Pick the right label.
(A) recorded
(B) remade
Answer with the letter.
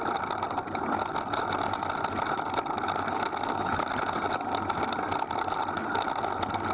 A